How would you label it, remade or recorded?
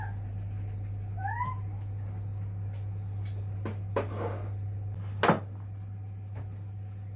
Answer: recorded